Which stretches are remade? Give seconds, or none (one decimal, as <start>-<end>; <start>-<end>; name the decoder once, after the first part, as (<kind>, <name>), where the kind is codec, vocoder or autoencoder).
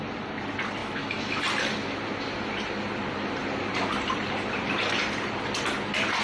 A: 0.8-1.4 (autoencoder, DAC-VAE)